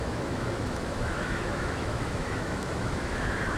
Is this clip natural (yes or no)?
no